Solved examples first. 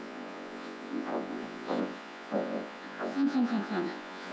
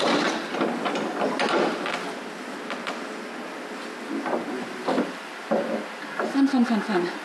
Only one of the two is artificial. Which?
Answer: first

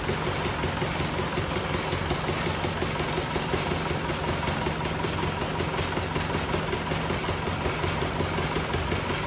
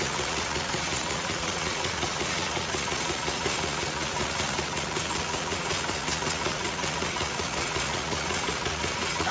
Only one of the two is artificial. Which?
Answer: second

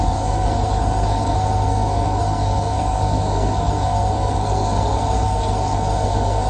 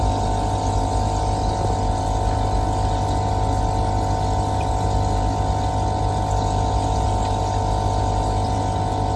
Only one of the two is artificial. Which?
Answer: first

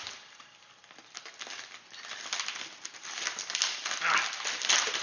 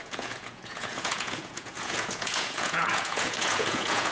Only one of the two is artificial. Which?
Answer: second